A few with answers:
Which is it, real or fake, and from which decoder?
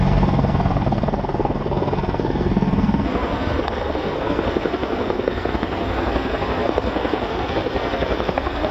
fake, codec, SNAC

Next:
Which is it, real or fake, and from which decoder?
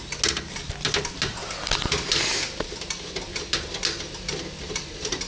real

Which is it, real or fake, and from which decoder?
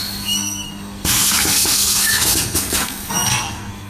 fake, codec, SNAC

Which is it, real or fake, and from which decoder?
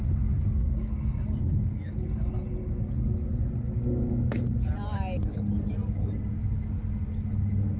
real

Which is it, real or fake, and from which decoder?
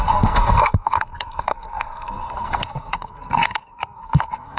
fake, codec, SNAC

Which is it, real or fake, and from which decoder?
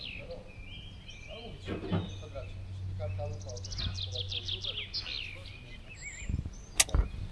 real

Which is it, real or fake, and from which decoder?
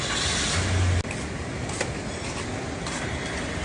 real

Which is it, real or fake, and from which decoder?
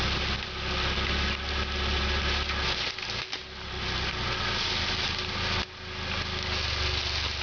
real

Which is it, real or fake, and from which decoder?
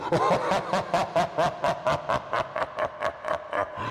real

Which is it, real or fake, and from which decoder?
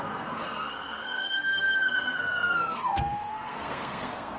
fake, codec, SNAC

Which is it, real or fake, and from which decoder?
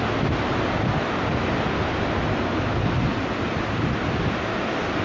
real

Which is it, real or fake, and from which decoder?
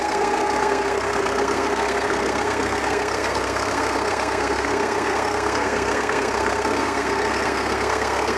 fake, codec, SNAC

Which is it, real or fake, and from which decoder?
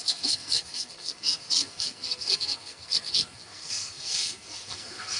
fake, codec, SNAC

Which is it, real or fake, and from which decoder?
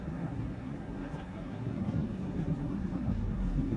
fake, codec, SNAC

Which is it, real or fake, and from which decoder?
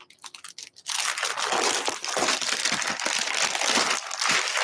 real